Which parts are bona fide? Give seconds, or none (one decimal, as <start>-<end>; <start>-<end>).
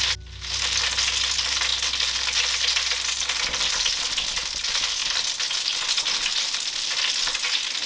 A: 0.0-7.9